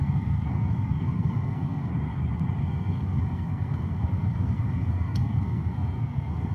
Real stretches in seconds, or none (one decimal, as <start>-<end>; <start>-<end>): 1.9-2.6